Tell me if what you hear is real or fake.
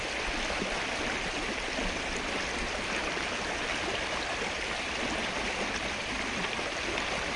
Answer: real